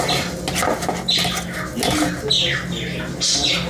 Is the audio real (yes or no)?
yes